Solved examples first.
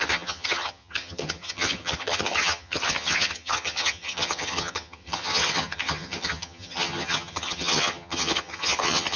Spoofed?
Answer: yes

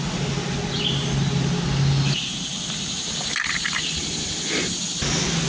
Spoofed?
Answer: no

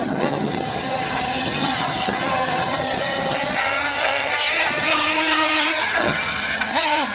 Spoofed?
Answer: yes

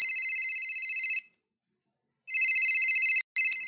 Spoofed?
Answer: no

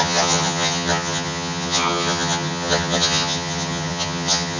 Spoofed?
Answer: yes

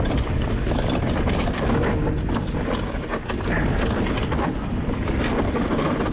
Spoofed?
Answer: no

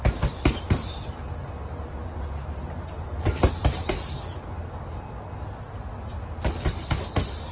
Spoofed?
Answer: no